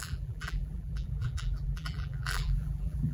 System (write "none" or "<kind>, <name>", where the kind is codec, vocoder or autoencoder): vocoder, BigVGAN v2